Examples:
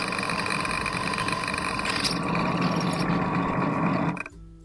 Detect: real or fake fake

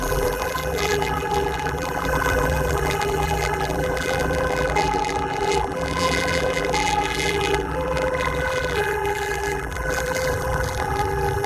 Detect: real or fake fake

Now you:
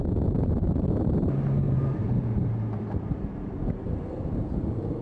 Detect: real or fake fake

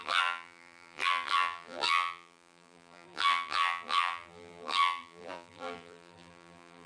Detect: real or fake fake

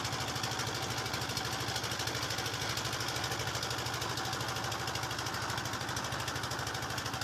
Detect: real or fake real